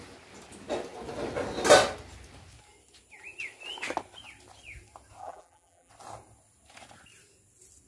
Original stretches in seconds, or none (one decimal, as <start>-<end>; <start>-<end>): 0.0-5.2; 5.9-7.9